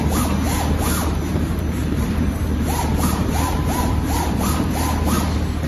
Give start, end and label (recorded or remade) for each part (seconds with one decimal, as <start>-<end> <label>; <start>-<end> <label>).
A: 0.0-1.3 recorded; 1.3-4.7 remade; 4.7-5.7 recorded